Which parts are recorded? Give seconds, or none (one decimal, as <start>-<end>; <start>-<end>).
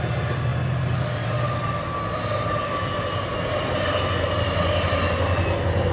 0.0-5.9